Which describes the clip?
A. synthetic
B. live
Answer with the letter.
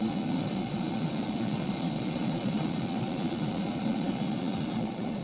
A